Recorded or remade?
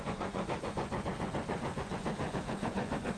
remade